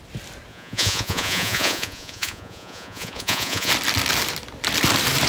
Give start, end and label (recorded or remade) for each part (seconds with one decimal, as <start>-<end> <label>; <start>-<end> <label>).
0.0-0.5 recorded; 0.5-3.7 remade; 3.7-5.3 recorded